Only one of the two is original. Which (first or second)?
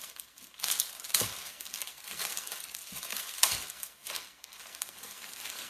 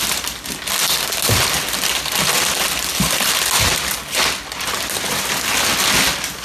second